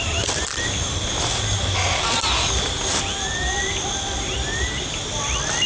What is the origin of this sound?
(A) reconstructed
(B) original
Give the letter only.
B